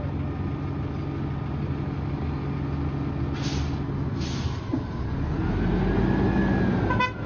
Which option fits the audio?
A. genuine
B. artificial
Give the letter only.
A